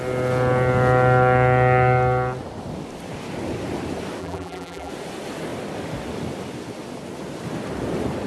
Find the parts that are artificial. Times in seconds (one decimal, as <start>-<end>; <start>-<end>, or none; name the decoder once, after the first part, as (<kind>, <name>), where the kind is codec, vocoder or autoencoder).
4.2-4.9 (vocoder, BigVGAN v2)